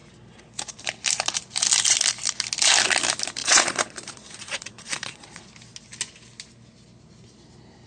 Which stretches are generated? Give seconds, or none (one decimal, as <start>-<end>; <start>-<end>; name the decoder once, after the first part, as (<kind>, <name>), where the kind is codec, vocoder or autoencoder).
3.4-5.4 (vocoder, Vocos)